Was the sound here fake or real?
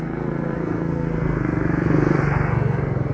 fake